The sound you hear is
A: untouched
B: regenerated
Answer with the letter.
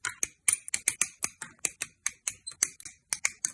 A